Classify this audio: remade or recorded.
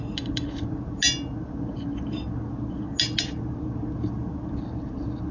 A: recorded